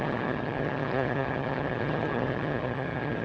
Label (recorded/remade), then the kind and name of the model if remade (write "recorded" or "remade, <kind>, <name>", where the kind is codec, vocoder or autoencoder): remade, vocoder, HiFi-GAN